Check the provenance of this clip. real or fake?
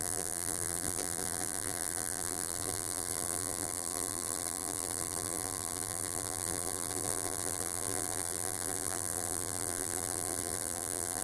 fake